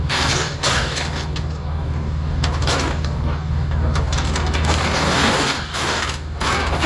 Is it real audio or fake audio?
fake